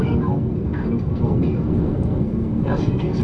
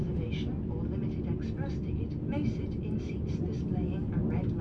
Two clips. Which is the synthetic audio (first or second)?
first